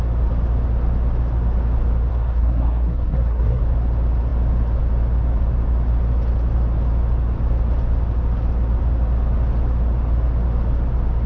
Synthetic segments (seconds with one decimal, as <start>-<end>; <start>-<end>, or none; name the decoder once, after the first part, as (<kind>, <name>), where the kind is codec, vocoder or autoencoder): 2.1-3.6 (codec, SNAC)